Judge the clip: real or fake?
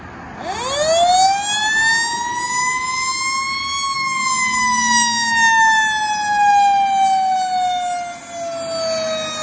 real